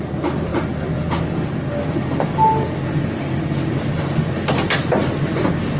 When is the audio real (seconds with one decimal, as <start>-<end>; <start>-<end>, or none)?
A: 0.0-5.8